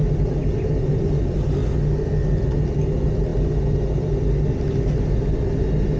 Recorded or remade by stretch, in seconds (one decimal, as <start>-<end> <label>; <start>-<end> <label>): 0.0-6.0 recorded